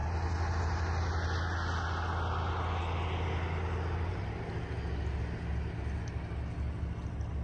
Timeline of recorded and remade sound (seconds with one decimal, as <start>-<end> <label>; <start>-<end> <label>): 0.0-7.4 recorded